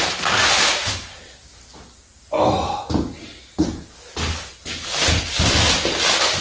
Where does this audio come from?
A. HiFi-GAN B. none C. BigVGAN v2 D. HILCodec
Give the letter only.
B